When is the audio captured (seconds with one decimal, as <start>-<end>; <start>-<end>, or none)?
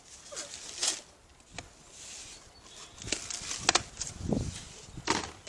0.0-5.5